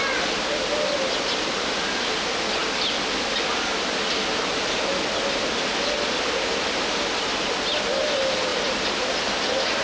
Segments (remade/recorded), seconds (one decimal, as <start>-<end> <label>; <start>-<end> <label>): 0.0-9.8 recorded